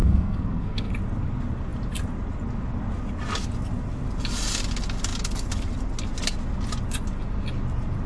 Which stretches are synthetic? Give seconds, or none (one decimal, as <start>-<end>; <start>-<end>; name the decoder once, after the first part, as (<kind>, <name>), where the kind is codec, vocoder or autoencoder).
0.0-0.9 (codec, SNAC)

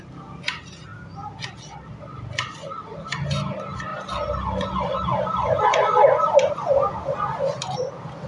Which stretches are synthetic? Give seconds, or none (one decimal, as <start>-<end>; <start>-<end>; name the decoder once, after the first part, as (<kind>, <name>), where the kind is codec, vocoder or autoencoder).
none

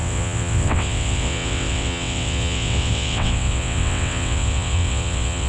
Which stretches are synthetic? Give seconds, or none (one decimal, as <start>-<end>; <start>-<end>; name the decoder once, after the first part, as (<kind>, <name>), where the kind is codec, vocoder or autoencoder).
0.0-5.5 (vocoder, WaveNeXt)

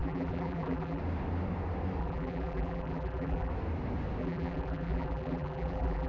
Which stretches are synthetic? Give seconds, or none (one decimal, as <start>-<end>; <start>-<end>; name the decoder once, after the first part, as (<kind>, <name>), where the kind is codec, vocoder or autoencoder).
0.0-1.0 (vocoder, BigVGAN v2); 2.0-3.5; 4.2-6.1

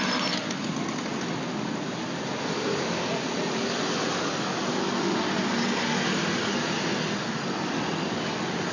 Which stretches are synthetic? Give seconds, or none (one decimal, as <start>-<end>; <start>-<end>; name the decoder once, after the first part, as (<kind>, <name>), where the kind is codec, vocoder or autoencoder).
none

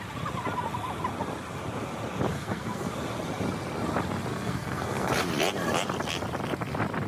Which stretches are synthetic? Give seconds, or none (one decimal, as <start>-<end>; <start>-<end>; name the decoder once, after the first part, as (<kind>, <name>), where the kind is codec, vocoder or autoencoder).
2.3-2.9 (codec, SNAC); 4.3-5.1

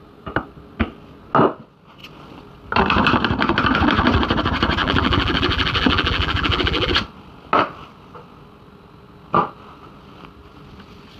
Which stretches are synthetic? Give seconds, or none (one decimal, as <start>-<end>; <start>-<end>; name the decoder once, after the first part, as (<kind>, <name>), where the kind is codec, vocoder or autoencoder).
4.8-6.9 (vocoder, BigVGAN v2)

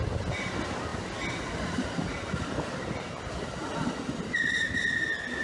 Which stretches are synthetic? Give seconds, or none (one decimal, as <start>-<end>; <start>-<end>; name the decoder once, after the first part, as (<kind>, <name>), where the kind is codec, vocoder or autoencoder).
none